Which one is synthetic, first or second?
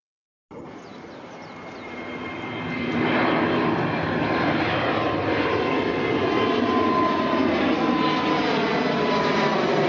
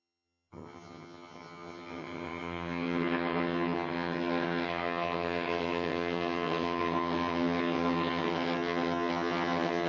second